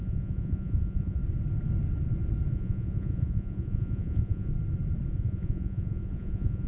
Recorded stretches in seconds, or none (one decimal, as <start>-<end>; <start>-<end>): 1.2-2.5; 4.5-5.1